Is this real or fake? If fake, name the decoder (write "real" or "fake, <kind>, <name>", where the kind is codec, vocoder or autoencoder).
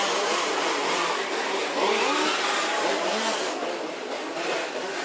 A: real